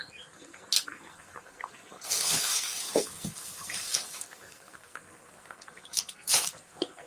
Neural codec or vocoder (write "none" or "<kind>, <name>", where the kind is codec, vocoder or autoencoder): codec, SNAC